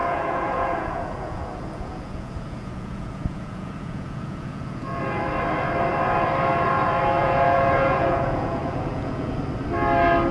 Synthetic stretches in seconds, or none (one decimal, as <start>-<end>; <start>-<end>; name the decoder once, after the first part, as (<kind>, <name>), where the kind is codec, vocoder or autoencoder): 0.0-5.0 (vocoder, Vocos); 7.2-9.4